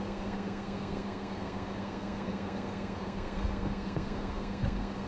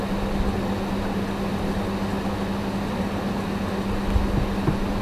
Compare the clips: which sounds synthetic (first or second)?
first